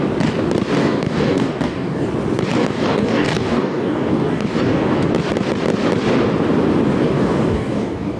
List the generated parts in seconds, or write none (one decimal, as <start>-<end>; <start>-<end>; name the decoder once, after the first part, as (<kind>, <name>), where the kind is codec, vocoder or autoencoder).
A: 0.8-2.1 (codec, DAC); 2.6-5.1; 7.0-8.2